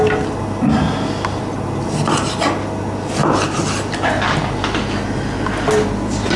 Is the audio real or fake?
real